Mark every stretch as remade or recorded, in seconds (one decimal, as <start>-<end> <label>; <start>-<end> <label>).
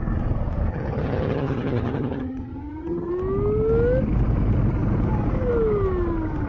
0.0-0.7 recorded; 0.7-3.1 remade; 3.1-6.5 recorded